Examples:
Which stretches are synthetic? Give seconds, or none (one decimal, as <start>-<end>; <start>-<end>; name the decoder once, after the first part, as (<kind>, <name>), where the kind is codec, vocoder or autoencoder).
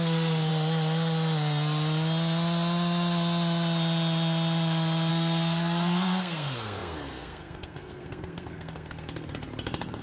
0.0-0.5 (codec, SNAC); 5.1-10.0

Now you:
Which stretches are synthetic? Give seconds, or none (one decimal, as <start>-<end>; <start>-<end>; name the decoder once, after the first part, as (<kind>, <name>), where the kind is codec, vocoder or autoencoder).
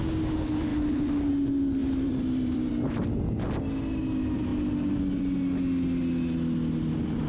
1.8-2.7 (vocoder, BigVGAN v2)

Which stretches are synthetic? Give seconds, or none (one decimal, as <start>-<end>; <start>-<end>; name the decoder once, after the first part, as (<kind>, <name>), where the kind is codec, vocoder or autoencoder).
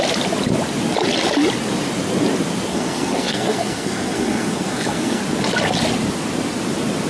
2.7-5.2 (codec, SNAC)